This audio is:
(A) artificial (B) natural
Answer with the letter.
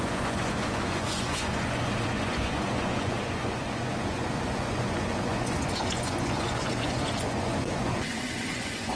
A